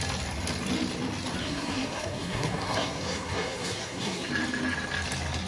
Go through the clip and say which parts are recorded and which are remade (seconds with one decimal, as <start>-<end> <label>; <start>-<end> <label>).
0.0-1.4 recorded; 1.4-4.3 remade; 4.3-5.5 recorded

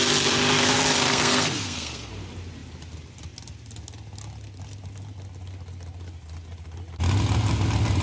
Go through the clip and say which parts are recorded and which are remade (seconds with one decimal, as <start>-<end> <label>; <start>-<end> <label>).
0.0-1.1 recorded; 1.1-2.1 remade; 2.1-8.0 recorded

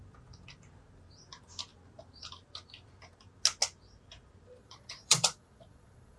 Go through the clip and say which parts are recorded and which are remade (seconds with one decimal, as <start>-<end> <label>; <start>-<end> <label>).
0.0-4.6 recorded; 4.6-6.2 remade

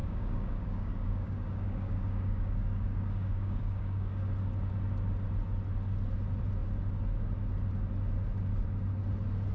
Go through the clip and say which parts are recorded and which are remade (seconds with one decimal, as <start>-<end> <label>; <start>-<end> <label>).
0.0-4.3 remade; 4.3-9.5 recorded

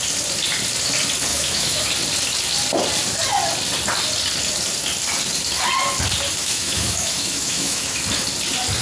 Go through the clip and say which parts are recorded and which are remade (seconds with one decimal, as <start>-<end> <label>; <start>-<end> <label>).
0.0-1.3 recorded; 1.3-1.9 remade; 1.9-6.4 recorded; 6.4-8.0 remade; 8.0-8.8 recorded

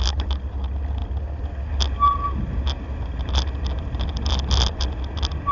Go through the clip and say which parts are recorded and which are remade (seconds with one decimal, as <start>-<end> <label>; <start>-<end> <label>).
0.0-5.5 recorded